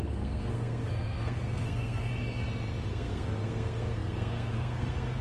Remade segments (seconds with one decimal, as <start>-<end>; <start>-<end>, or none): 0.0-2.1; 2.9-5.2